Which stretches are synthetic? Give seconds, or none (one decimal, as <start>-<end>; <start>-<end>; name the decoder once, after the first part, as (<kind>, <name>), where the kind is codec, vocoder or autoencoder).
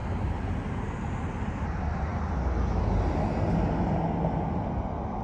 none